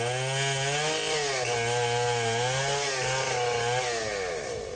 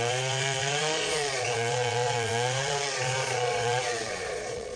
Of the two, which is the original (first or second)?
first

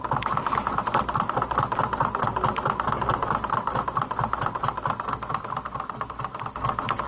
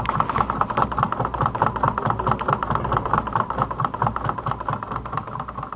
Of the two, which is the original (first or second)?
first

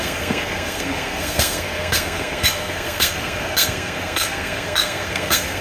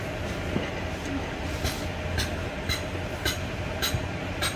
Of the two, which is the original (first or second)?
second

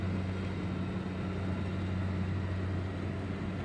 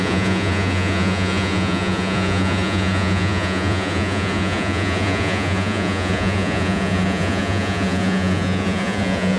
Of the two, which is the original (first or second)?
first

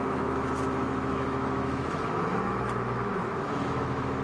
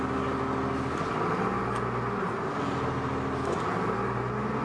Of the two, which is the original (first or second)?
second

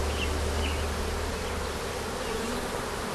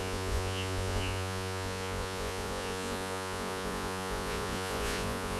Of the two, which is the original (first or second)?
first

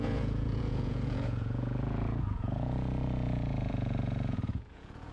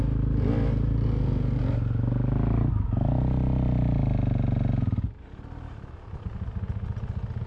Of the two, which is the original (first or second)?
second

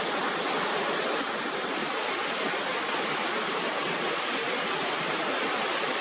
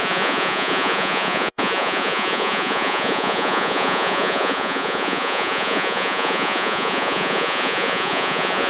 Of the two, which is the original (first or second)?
first